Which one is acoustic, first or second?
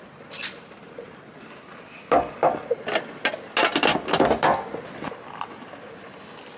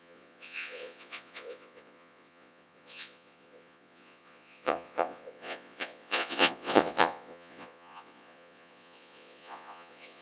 first